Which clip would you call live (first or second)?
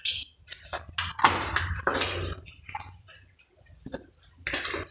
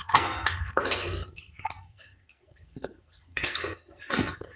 first